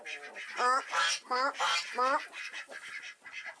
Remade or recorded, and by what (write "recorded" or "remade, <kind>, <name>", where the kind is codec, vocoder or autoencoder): recorded